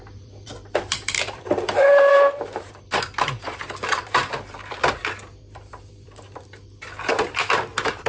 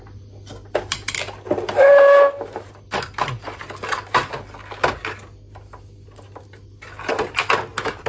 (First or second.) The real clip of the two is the second